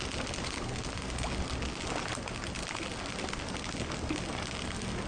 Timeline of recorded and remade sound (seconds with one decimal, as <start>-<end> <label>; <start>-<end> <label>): 0.0-5.1 recorded